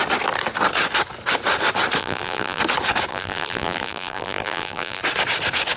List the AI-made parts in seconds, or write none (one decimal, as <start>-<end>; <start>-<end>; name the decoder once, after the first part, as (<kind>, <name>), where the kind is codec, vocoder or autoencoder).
2.0-2.6 (vocoder, BigVGAN v2); 3.1-5.0